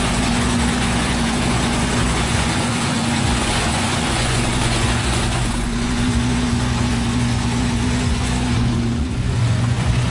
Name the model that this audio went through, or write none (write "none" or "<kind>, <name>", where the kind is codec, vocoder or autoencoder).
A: vocoder, Vocos